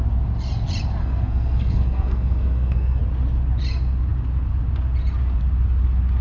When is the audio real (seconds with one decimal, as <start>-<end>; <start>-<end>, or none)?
0.0-1.0; 3.0-6.2